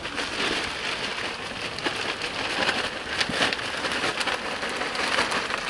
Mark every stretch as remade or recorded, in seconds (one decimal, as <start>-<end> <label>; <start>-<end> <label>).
0.0-5.7 recorded